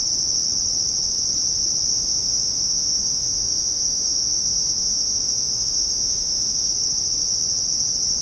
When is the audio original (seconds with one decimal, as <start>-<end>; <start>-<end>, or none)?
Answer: 0.0-1.9; 6.7-8.2